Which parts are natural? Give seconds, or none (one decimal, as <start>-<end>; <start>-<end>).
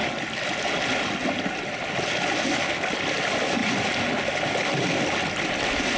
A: 0.0-6.0